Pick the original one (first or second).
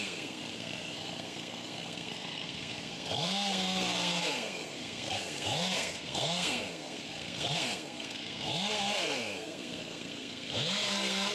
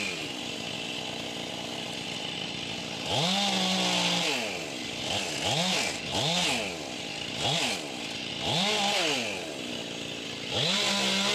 second